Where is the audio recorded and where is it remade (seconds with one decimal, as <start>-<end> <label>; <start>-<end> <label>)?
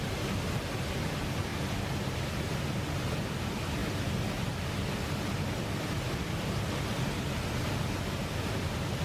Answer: 0.0-9.0 recorded